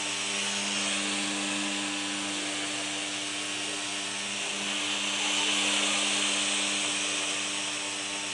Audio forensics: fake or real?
real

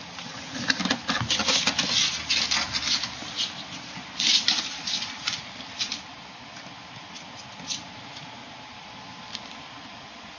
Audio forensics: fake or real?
real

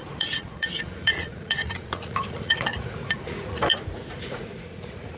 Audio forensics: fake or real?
fake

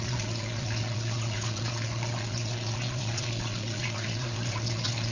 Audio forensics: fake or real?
fake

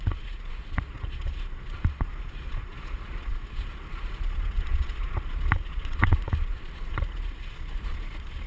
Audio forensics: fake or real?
fake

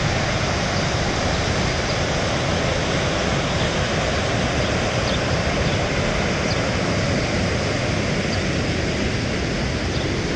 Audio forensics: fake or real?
real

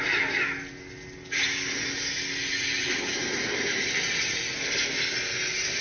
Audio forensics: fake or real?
real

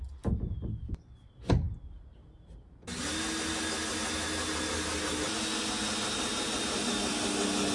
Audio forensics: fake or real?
real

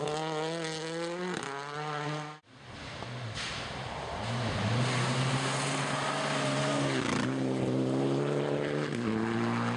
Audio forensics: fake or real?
real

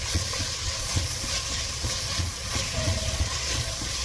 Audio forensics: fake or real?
fake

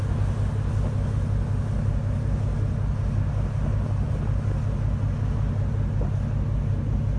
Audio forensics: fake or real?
real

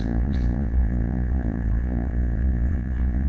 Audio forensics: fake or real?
fake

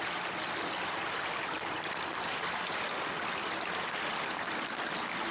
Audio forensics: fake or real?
real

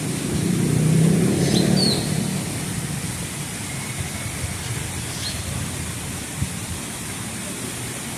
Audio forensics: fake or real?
real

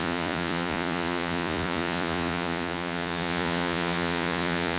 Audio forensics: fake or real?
fake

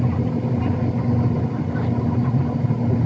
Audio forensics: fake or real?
real